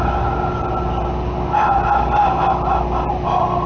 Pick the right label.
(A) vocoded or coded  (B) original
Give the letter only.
B